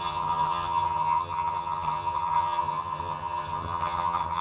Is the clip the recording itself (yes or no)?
no